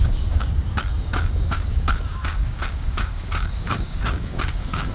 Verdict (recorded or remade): remade